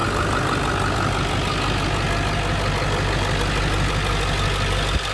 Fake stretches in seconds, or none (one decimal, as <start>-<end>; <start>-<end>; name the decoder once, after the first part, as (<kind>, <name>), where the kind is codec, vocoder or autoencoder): none